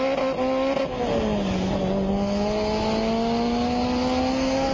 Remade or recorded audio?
recorded